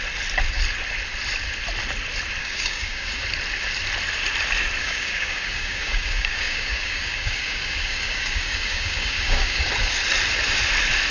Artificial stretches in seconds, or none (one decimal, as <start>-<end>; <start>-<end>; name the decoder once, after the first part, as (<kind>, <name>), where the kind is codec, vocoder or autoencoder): 2.4-3.2 (codec, DAC); 4.8-9.7